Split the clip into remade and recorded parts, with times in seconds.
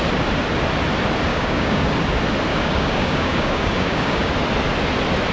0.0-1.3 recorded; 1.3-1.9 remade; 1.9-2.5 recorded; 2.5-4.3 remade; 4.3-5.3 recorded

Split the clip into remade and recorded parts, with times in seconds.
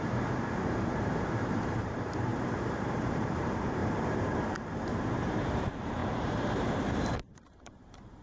0.0-2.3 remade; 2.3-3.0 recorded; 3.0-3.8 remade; 3.8-5.2 recorded; 5.2-8.2 remade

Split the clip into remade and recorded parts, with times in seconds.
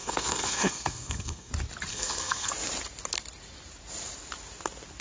0.0-1.5 remade; 1.5-1.9 recorded; 1.9-2.5 remade; 2.5-5.0 recorded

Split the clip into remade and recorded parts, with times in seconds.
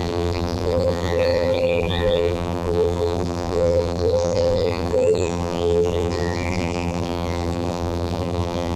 0.0-8.8 remade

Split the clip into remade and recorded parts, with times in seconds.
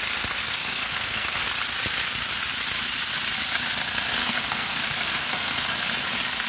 0.0-0.4 recorded; 0.4-1.5 remade; 1.5-4.2 recorded; 4.2-5.7 remade; 5.7-6.5 recorded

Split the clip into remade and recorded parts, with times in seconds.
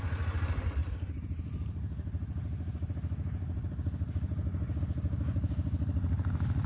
0.0-0.8 recorded; 0.8-4.8 remade; 4.8-6.7 recorded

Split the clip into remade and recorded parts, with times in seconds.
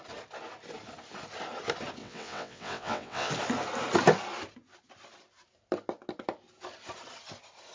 0.0-2.0 recorded; 2.0-3.3 remade; 3.3-7.7 recorded